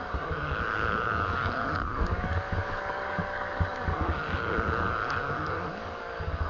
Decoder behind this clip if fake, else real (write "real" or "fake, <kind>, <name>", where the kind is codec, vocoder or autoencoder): fake, codec, DAC